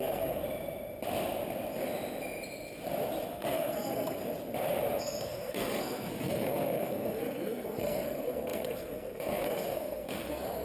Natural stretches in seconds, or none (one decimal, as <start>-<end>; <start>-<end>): 0.4-3.3; 4.2-5.0